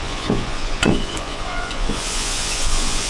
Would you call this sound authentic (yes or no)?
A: no